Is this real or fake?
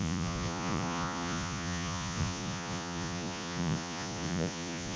fake